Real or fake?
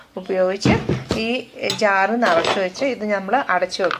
real